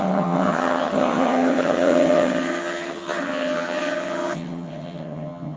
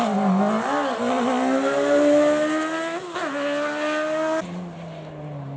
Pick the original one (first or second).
second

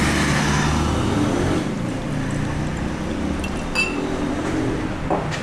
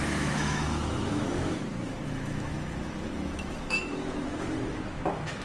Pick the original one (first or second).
first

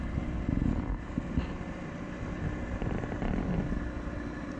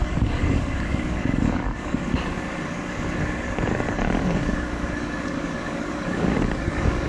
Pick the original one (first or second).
first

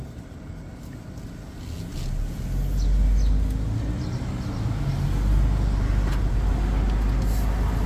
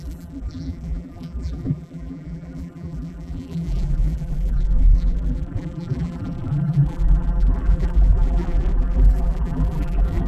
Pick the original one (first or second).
first